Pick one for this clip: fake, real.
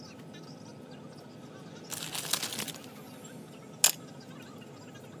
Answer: real